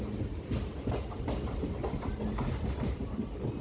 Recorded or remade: recorded